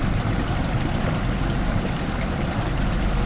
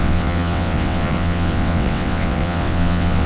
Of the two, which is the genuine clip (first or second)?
first